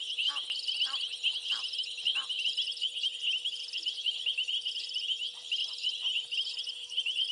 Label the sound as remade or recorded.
remade